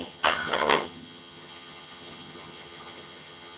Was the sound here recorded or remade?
remade